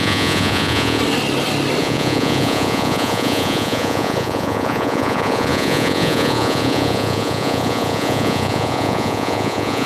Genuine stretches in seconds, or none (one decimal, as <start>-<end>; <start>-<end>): 1.0-1.8